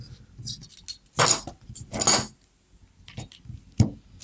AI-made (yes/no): no